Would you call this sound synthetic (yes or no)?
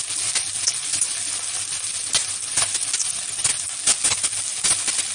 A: no